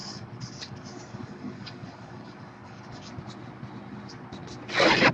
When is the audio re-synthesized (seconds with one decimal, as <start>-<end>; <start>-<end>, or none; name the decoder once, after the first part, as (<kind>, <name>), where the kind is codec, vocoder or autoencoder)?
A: 0.0-3.1 (codec, DAC)